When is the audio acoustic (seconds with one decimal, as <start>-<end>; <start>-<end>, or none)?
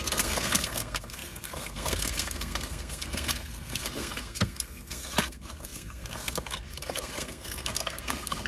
none